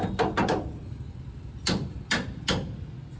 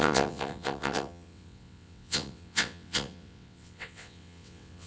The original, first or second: first